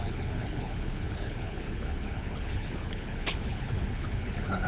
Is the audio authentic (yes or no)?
no